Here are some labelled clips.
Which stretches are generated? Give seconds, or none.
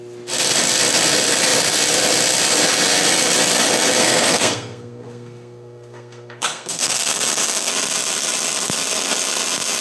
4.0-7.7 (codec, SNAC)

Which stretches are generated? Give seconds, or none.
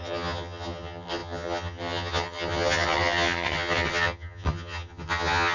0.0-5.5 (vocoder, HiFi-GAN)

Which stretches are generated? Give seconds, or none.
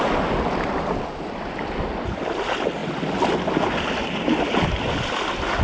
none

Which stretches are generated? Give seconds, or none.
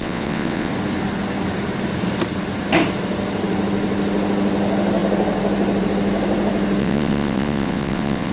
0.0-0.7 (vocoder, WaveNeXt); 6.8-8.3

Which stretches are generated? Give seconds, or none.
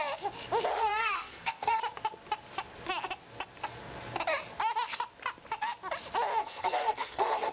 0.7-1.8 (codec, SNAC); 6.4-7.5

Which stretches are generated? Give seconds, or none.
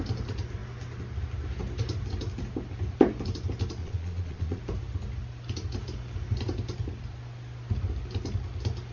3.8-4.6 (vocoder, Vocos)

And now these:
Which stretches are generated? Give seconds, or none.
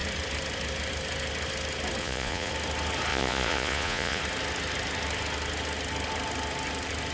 2.0-2.5 (vocoder, Vocos); 3.1-4.2